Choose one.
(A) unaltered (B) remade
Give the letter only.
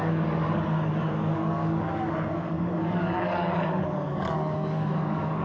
B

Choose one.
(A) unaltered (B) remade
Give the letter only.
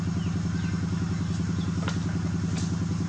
A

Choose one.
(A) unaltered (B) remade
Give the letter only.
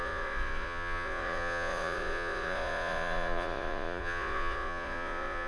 B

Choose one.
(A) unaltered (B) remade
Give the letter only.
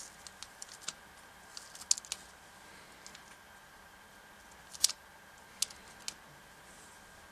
A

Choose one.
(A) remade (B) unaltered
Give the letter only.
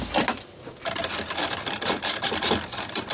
B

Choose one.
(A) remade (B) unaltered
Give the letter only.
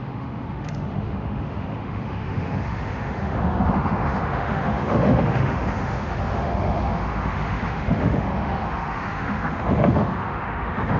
A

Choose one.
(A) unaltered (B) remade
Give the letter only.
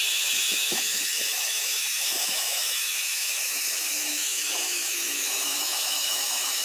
B